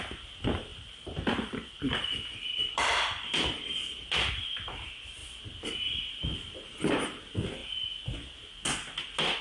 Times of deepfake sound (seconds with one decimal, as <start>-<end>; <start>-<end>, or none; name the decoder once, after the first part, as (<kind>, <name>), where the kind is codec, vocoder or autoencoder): 0.7-4.3 (vocoder, BigVGAN v2)